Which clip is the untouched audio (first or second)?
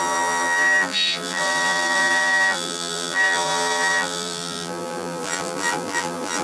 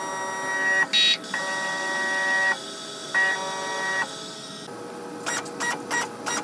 second